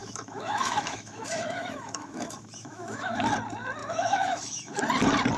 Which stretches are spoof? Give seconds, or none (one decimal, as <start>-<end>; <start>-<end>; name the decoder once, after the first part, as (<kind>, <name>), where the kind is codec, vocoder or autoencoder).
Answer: 0.0-3.2 (autoencoder, DAC-VAE); 3.8-4.8